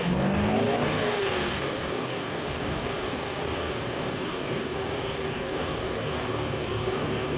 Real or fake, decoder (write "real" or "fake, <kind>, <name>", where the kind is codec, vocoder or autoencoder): fake, codec, DAC